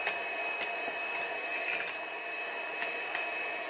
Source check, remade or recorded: recorded